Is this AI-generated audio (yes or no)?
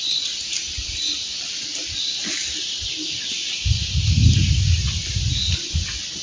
no